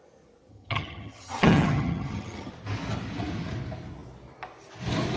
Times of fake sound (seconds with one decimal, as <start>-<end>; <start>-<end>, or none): 0.5-2.5